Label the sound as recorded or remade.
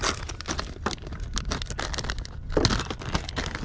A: recorded